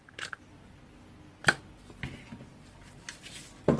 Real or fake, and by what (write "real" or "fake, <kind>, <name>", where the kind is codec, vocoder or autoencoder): real